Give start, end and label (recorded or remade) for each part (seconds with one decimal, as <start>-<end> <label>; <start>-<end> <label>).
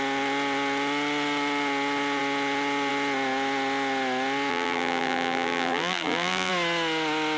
0.0-4.5 recorded; 4.5-6.5 remade; 6.5-7.4 recorded